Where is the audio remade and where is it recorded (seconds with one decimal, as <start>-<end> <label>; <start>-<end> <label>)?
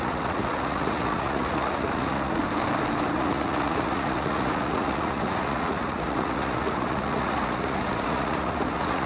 0.0-2.4 remade; 2.4-3.1 recorded; 3.1-9.1 remade